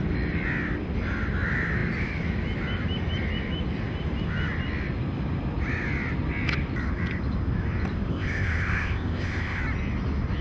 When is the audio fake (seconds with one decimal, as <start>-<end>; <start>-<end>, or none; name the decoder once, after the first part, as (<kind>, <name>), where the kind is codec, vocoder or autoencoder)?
8.1-9.6 (codec, ZipCodec)